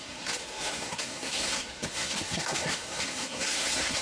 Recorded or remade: remade